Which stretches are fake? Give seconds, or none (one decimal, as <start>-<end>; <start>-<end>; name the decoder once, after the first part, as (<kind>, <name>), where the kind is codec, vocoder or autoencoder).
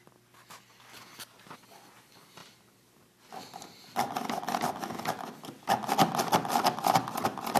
none